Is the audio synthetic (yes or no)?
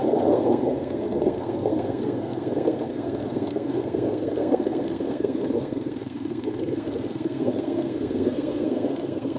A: yes